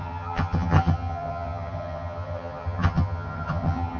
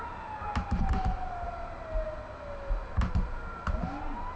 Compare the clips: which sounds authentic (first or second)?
second